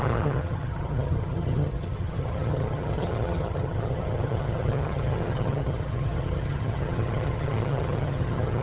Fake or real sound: fake